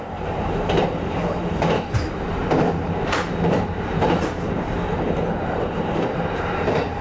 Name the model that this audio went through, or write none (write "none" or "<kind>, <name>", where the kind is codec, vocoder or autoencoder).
vocoder, BigVGAN v2